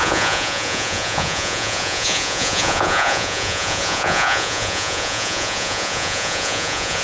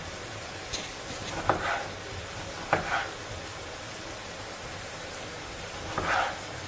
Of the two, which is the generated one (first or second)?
first